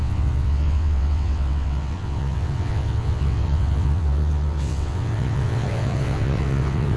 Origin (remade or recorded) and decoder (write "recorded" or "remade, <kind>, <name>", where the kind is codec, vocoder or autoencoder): remade, vocoder, WaveNeXt